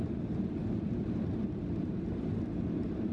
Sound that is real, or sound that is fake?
real